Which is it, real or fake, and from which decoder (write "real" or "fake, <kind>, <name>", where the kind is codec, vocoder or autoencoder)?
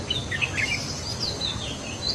real